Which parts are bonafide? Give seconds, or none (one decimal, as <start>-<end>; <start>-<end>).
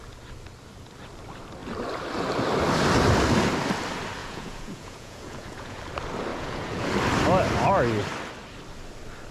0.0-4.2; 5.8-6.3; 6.9-9.3